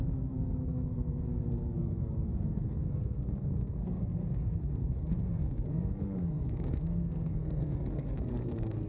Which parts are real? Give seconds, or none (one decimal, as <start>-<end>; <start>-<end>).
none